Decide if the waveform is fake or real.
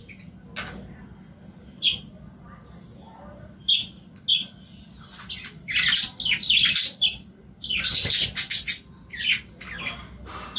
real